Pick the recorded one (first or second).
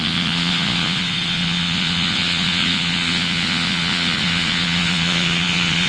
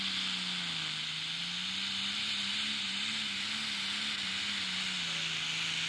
second